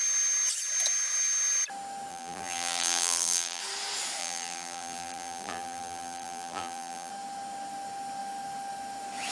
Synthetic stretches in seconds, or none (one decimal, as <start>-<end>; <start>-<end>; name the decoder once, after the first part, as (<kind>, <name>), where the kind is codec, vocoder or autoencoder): 2.1-3.6 (vocoder, BigVGAN v2); 4.2-7.1